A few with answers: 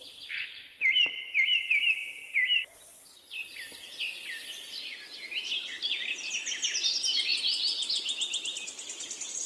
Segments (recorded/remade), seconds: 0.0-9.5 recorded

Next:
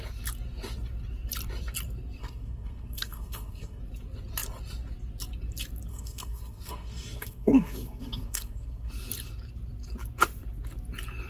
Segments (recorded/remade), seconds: 0.0-2.2 recorded; 2.2-3.8 remade; 3.8-5.9 recorded; 5.9-8.9 remade; 8.9-11.3 recorded

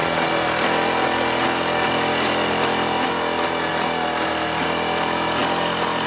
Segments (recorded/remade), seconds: 0.0-6.1 recorded

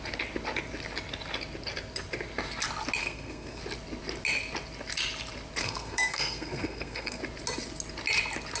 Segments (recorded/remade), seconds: 0.0-3.0 recorded; 3.0-3.6 remade; 3.6-5.6 recorded; 5.6-7.2 remade; 7.2-8.6 recorded

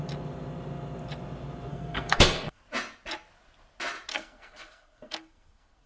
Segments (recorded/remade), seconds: 0.0-1.7 recorded; 1.7-2.6 remade; 2.6-4.1 recorded; 4.1-5.9 remade

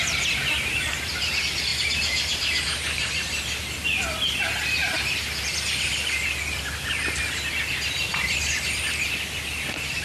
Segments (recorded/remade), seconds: 0.0-10.0 recorded

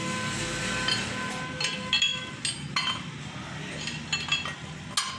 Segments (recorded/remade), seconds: 0.0-5.2 recorded